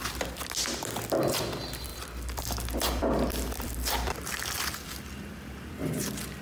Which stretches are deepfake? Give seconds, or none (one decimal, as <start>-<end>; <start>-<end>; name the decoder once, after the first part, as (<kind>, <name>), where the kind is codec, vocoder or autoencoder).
1.9-5.7 (vocoder, BigVGAN v2)